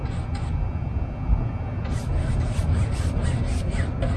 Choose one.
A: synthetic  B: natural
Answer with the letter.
B